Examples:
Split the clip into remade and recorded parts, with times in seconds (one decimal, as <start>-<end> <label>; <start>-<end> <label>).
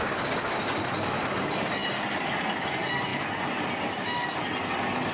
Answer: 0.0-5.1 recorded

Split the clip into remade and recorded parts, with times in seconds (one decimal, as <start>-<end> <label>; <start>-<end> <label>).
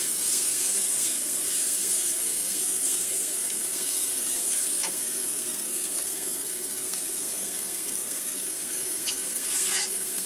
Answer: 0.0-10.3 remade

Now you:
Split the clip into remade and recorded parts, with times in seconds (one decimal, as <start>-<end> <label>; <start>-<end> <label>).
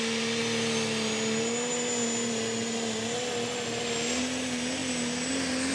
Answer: 0.0-5.7 recorded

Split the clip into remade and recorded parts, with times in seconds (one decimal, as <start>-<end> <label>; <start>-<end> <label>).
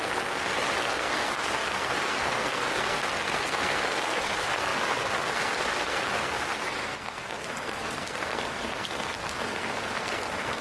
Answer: 0.0-10.6 remade